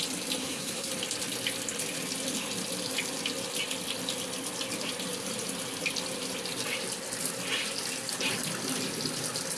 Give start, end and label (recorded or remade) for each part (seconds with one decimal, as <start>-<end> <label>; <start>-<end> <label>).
0.0-0.4 recorded; 0.4-0.9 remade; 0.9-9.6 recorded